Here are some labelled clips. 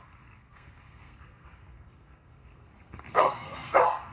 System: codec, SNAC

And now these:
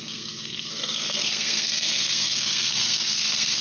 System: codec, SNAC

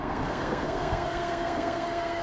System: codec, SNAC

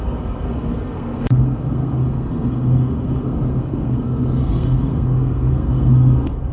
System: codec, SNAC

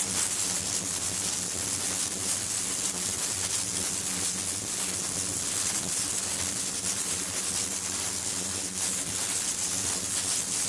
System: none